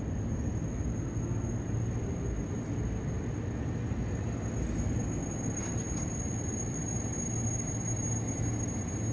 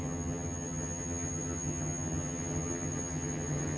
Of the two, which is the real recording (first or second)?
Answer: first